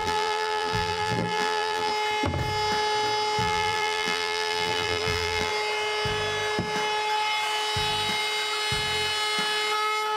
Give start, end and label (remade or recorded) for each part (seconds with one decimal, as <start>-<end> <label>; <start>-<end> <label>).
0.0-1.9 remade; 1.9-3.4 recorded; 3.4-5.5 remade; 5.5-10.2 recorded